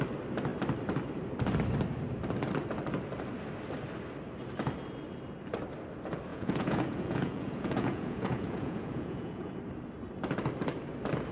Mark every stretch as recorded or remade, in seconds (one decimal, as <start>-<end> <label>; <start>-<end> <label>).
0.0-6.3 recorded; 6.3-9.6 remade; 9.6-11.3 recorded